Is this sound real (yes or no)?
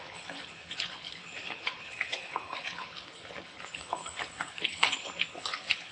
no